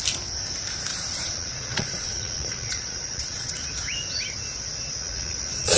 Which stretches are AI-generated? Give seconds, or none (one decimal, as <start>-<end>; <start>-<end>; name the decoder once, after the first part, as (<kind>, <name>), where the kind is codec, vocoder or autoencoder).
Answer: 0.9-3.5 (vocoder, Vocos); 5.0-5.8